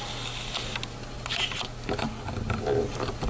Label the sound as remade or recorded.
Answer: recorded